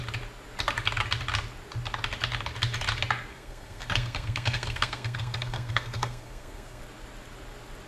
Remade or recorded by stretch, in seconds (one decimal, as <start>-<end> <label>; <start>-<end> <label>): 0.0-3.3 recorded; 3.3-6.8 remade; 6.8-7.9 recorded